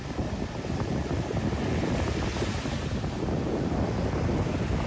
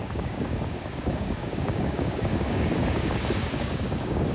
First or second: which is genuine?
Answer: first